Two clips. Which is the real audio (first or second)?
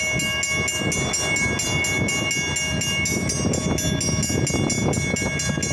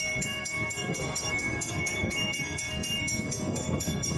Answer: first